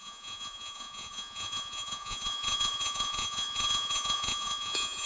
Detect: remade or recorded remade